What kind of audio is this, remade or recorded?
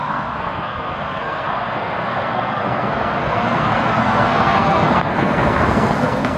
remade